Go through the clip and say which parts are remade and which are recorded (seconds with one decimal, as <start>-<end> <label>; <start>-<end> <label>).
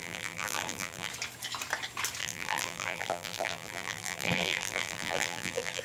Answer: 0.0-1.1 remade; 1.1-2.2 recorded; 2.2-5.8 remade